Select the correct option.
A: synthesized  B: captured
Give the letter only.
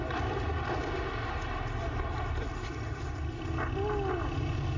B